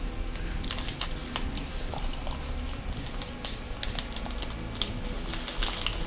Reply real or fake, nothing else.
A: real